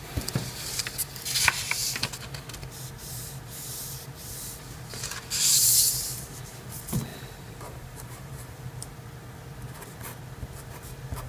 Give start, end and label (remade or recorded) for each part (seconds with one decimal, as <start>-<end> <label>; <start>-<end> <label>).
0.0-7.1 recorded; 7.1-8.7 remade; 8.7-11.3 recorded